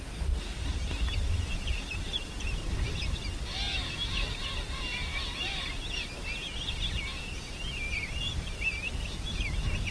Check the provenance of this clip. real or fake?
real